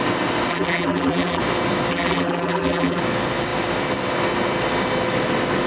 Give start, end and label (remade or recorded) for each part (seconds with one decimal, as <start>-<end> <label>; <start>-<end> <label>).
0.0-0.5 recorded; 0.5-1.4 remade; 1.4-1.9 recorded; 1.9-3.0 remade; 3.0-5.7 recorded